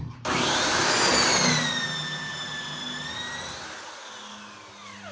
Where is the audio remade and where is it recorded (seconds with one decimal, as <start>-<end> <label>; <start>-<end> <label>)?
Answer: 0.0-5.1 recorded